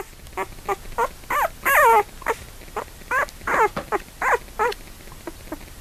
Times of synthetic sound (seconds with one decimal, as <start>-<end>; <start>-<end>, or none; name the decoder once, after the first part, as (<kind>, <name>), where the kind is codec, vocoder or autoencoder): none